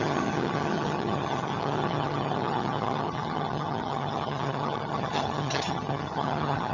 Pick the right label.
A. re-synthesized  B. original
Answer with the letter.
A